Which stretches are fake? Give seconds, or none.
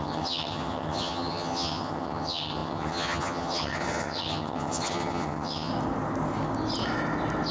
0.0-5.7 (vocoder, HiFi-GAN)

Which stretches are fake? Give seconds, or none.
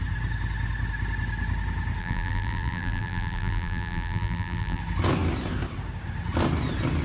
2.0-4.8 (vocoder, BigVGAN v2)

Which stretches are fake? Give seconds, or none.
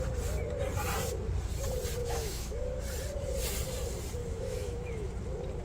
2.0-2.8 (autoencoder, DAC-VAE); 4.2-5.1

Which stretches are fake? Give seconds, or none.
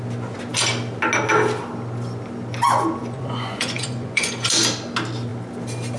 3.0-4.6 (vocoder, Vocos)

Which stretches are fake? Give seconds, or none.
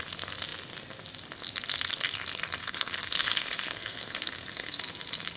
2.6-4.8 (codec, SNAC)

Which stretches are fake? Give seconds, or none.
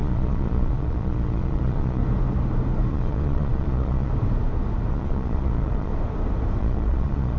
0.0-2.0 (vocoder, Vocos); 2.9-4.1; 4.9-5.9; 6.6-7.4